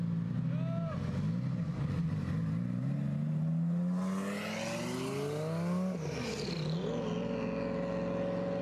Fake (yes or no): no